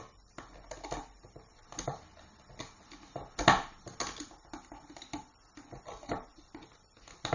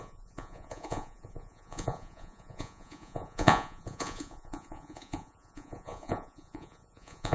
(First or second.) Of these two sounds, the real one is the first